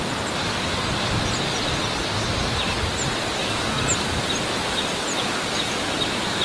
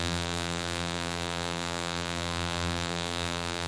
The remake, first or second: second